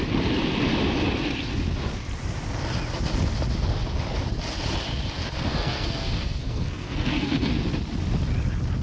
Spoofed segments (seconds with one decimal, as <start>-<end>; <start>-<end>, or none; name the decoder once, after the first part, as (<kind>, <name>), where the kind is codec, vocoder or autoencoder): 5.5-7.5 (codec, SNAC)